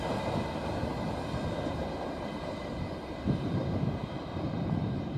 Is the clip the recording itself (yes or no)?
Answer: yes